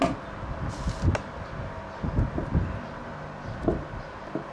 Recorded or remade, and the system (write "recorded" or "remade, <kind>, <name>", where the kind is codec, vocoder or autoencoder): recorded